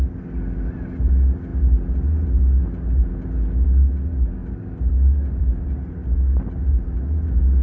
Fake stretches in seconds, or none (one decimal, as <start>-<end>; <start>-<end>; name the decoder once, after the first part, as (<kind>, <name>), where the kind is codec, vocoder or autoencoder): none